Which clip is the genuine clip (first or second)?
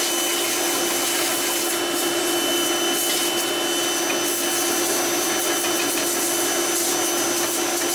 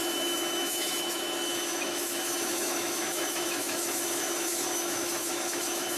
first